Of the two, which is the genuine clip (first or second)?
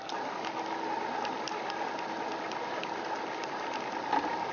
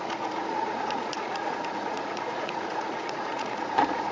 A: first